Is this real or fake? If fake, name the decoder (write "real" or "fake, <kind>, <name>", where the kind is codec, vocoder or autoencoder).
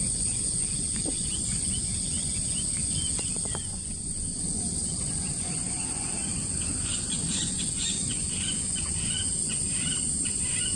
fake, vocoder, Vocos